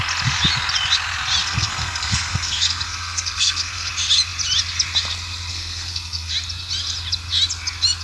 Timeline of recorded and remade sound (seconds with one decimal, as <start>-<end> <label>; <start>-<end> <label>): 0.0-1.4 recorded; 1.4-3.9 remade; 3.9-5.5 recorded; 5.5-6.3 remade; 6.3-8.0 recorded